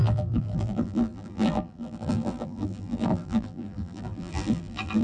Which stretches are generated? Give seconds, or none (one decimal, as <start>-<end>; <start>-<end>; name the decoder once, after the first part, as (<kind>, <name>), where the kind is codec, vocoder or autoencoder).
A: 0.0-5.0 (vocoder, BigVGAN v2)